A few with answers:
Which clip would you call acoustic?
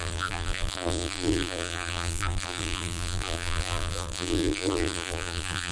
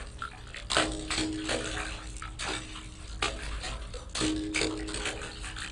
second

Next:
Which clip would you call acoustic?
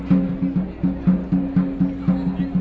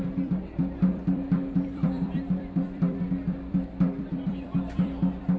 first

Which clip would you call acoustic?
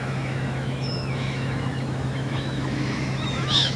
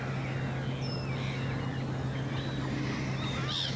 second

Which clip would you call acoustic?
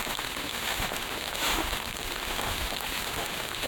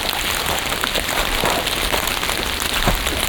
second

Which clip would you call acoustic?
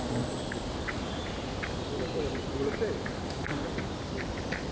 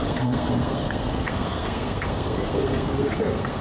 first